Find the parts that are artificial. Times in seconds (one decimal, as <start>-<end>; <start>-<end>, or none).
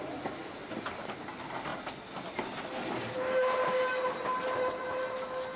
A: none